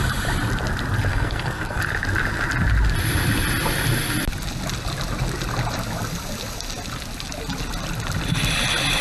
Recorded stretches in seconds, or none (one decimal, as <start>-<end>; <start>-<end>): 0.0-1.1; 1.8-9.0